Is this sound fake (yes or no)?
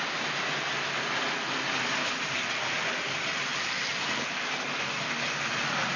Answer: no